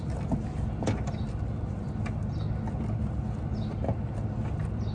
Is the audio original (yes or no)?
yes